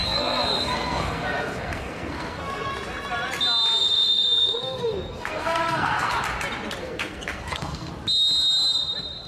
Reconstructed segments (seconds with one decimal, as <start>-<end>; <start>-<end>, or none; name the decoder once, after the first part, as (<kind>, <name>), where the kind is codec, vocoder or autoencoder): 0.0-2.7 (codec, SNAC); 3.8-6.1; 6.8-7.9